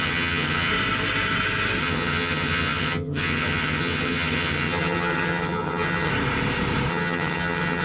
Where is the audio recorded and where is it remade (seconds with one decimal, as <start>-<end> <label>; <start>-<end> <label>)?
0.0-0.7 remade; 0.7-1.8 recorded; 1.8-6.1 remade; 6.1-6.9 recorded; 6.9-7.8 remade